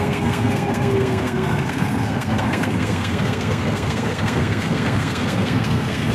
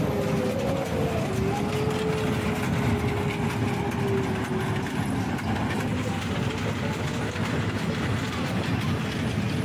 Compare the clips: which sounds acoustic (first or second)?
second